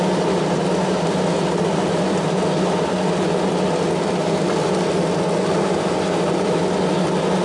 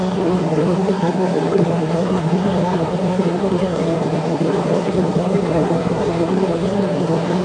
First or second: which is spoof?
second